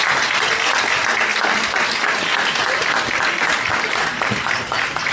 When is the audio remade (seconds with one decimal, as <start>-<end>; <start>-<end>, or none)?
none